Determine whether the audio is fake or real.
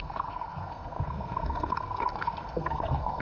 fake